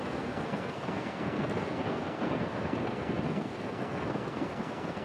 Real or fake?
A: fake